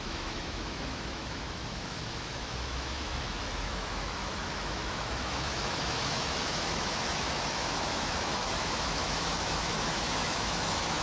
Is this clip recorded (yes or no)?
no